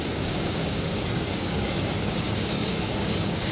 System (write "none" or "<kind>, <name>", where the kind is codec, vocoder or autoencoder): codec, DAC